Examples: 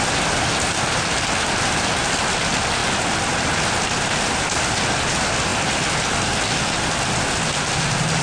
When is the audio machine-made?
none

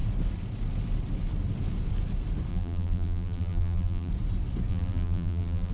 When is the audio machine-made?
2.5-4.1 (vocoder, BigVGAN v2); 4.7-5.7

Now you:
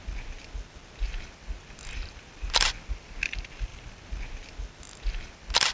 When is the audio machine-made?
none

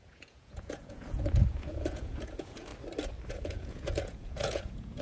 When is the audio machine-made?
0.0-2.7 (vocoder, Vocos); 3.3-5.0